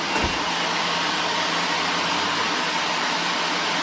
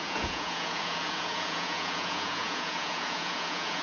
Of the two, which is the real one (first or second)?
first